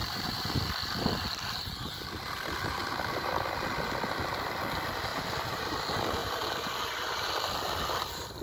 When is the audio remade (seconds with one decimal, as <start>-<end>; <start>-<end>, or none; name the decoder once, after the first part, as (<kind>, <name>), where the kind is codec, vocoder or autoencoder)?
0.0-0.6 (vocoder, BigVGAN v2); 2.8-3.3; 5.1-5.7; 6.2-6.8